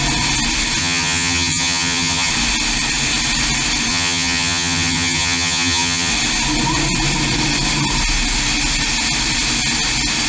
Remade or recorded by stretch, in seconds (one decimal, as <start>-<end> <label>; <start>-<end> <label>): 0.0-0.8 recorded; 0.8-2.3 remade; 2.3-3.9 recorded; 3.9-6.1 remade; 6.1-10.3 recorded